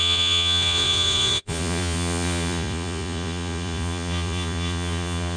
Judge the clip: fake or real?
fake